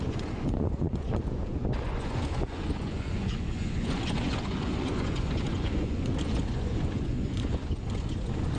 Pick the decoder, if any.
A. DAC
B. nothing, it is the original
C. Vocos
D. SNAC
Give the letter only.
C